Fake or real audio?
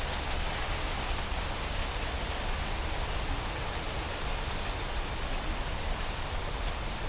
real